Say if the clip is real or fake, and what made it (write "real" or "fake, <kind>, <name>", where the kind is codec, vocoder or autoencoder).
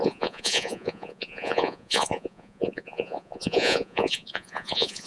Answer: fake, vocoder, Vocos